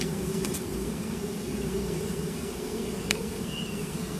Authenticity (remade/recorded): remade